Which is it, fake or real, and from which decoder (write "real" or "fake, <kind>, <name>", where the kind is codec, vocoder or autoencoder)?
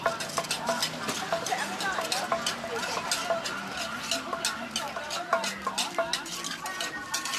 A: real